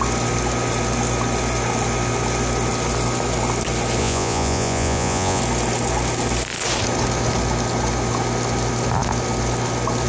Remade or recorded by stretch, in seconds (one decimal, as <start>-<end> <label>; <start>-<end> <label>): 0.0-4.0 recorded; 4.0-5.4 remade; 5.4-10.1 recorded